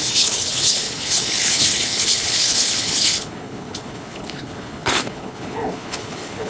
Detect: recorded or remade remade